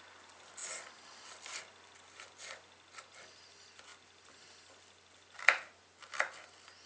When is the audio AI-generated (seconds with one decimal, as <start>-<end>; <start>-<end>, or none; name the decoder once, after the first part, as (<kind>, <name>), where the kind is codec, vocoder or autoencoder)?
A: none